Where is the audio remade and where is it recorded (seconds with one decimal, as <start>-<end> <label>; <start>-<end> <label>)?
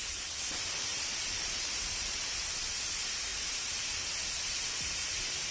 0.0-0.9 recorded; 0.9-2.5 remade; 2.5-3.3 recorded; 3.3-3.8 remade; 3.8-4.2 recorded; 4.2-5.5 remade